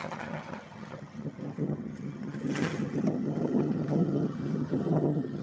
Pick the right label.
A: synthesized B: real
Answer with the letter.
A